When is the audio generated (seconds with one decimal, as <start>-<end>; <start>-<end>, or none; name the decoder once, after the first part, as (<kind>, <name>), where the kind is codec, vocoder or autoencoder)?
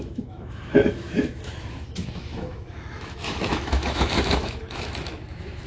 0.0-5.7 (autoencoder, DAC-VAE)